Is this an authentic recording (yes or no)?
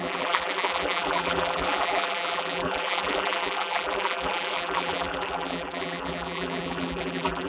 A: no